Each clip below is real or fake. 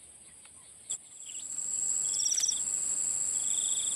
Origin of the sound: real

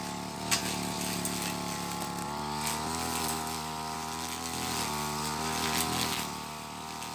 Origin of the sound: real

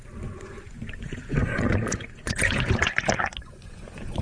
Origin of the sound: fake